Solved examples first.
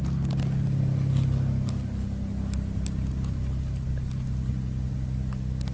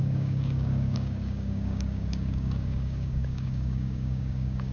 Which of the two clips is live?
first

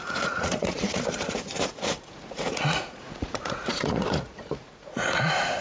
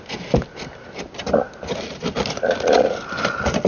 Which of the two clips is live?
second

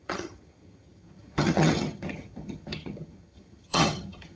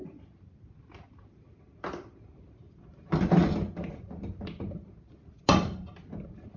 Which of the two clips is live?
second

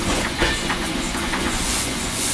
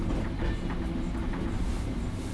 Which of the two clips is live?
second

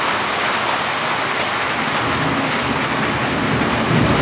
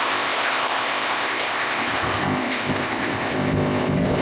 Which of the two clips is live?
first